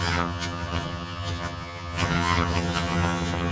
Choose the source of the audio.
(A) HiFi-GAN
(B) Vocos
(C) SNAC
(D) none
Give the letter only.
A